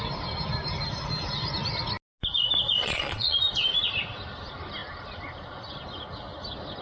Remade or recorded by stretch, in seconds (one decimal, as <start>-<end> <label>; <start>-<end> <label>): 0.0-2.8 recorded; 2.8-3.4 remade; 3.4-6.8 recorded